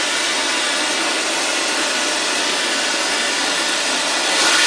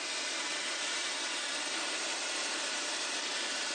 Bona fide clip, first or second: first